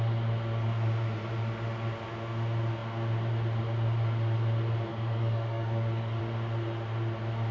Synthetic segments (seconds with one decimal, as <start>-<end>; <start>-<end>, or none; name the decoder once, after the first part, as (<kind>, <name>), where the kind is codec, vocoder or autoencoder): 4.9-6.2 (codec, DAC)